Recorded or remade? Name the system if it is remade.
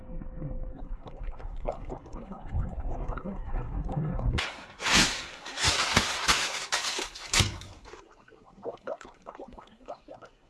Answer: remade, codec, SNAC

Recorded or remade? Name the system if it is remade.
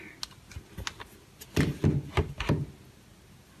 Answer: recorded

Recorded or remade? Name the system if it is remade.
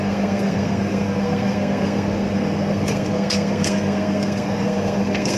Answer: remade, codec, SNAC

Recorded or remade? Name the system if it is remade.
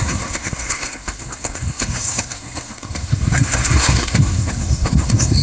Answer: remade, codec, SNAC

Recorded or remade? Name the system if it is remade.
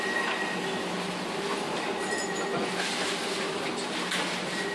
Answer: recorded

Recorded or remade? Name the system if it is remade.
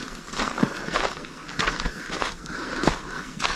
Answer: remade, codec, SNAC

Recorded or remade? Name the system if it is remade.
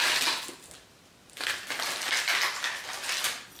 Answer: recorded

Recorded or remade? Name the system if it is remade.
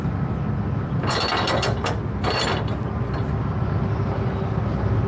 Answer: recorded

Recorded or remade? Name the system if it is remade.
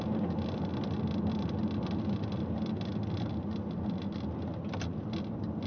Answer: recorded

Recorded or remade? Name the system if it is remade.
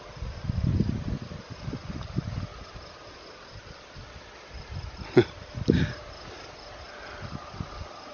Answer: recorded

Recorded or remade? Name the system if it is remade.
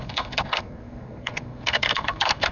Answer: remade, codec, SNAC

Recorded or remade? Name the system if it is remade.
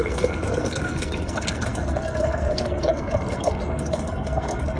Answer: remade, codec, SNAC